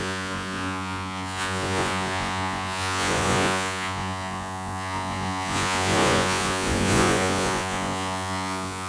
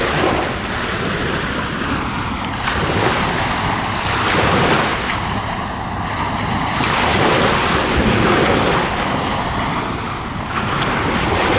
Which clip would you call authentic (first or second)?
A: second